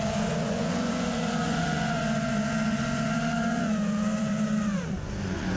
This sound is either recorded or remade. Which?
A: remade